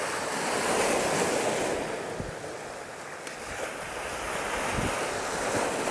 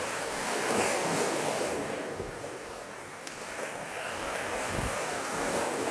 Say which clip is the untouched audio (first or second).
first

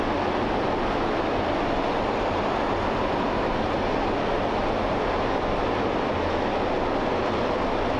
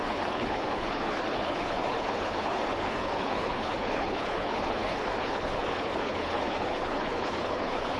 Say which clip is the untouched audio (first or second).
first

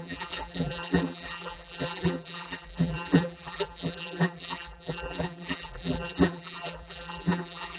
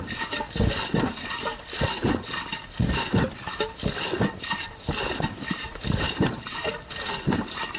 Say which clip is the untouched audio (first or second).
second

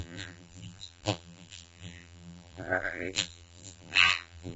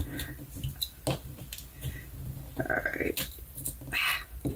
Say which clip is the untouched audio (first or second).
second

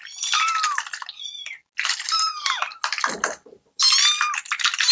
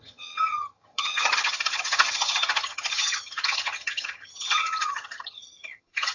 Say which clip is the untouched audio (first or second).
first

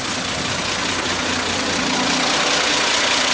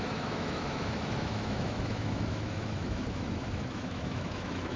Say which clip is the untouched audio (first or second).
first